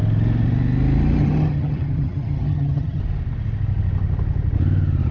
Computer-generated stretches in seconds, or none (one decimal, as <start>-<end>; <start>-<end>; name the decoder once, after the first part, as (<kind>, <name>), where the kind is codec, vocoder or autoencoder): 1.2-3.0 (vocoder, HiFi-GAN)